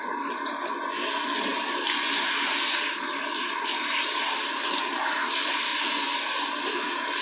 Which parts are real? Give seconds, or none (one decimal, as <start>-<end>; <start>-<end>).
0.0-7.2